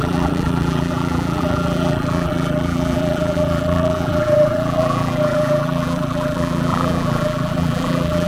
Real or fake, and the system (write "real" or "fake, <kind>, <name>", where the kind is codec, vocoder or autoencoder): fake, vocoder, BigVGAN v2